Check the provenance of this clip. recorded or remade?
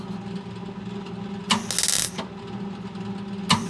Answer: recorded